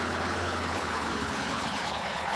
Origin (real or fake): fake